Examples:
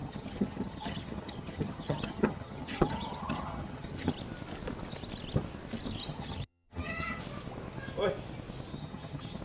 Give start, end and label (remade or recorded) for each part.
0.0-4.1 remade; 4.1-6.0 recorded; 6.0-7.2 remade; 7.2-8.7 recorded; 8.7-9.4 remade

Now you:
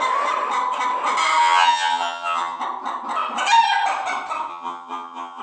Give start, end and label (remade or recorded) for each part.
0.0-1.4 recorded; 1.4-2.6 remade; 2.6-4.5 recorded; 4.5-5.4 remade

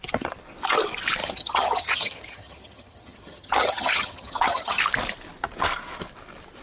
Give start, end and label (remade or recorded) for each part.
0.0-1.2 recorded; 1.2-4.8 remade; 4.8-6.6 recorded

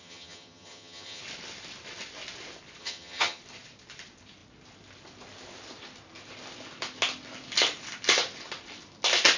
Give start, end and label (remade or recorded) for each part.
0.0-1.2 remade; 1.2-2.8 recorded; 2.8-3.4 remade; 3.4-9.4 recorded

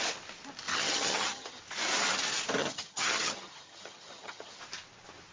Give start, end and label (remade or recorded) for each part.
0.0-0.7 recorded; 0.7-1.6 remade; 1.6-2.6 recorded; 2.6-4.6 remade; 4.6-5.3 recorded

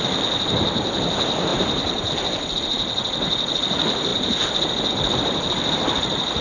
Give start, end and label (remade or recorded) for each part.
0.0-6.4 recorded